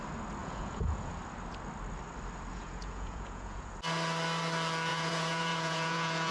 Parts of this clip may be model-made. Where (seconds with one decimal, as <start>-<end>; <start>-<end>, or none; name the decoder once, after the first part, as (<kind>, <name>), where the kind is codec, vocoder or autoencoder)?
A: 0.4-1.1 (vocoder, Vocos); 2.5-3.8; 4.9-6.3